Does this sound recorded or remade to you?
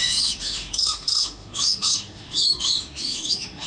remade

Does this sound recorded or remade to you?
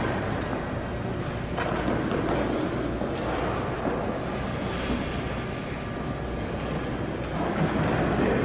recorded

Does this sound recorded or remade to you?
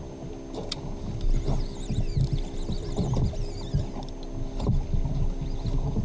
recorded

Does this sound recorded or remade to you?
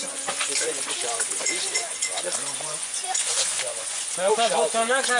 remade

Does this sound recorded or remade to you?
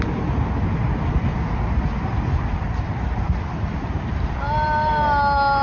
recorded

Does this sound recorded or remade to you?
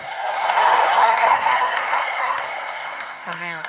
remade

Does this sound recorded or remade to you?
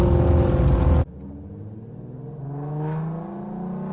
recorded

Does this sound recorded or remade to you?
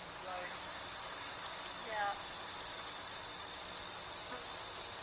recorded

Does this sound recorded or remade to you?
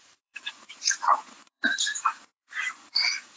remade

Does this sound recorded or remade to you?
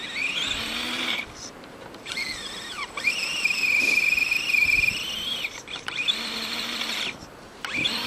recorded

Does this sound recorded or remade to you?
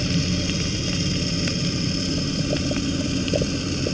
remade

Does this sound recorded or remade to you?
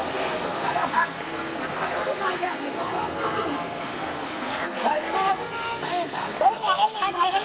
remade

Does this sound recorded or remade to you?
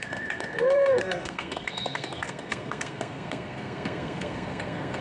remade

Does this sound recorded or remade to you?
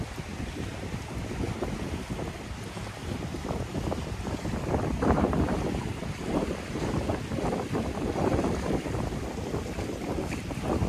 remade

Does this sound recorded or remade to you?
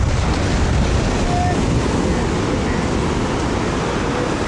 recorded